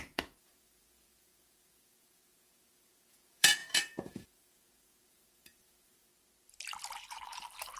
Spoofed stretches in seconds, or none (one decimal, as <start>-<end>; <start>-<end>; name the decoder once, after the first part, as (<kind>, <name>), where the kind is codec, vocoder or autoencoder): 0.0-6.1 (vocoder, Vocos)